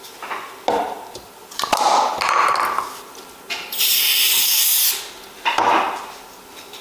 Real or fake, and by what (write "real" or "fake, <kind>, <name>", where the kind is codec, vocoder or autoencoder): real